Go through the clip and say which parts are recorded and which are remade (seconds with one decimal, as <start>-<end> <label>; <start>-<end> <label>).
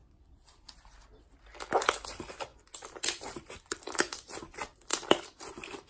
0.0-2.1 recorded; 2.1-4.9 remade; 4.9-5.9 recorded